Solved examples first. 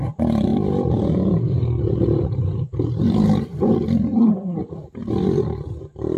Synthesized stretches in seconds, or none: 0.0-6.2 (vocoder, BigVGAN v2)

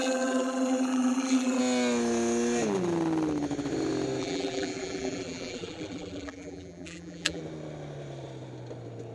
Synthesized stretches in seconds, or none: 0.0-1.6 (vocoder, BigVGAN v2); 4.2-7.4

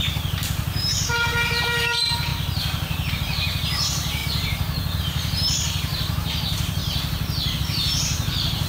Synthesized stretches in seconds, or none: 0.0-4.2 (vocoder, BigVGAN v2); 5.0-6.8; 7.6-8.7

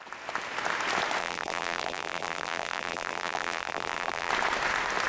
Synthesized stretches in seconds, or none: 1.2-4.3 (vocoder, BigVGAN v2)

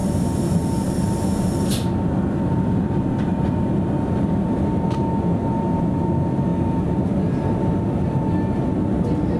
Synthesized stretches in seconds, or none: none

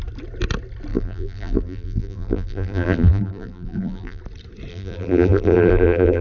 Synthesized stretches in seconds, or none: 0.9-4.2 (vocoder, BigVGAN v2); 4.7-6.2

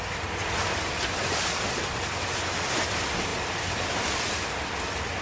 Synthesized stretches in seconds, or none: 0.0-5.2 (vocoder, BigVGAN v2)